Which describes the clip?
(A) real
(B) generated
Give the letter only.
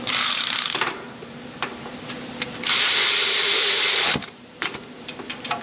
B